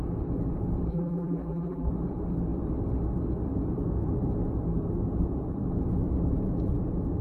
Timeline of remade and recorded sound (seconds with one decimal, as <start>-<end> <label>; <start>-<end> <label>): 0.0-0.9 recorded; 0.9-1.9 remade; 1.9-7.2 recorded